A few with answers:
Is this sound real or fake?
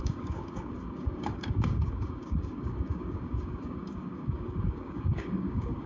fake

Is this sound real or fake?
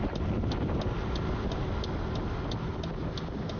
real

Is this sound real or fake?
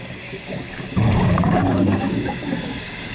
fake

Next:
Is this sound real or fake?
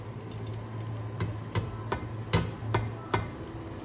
real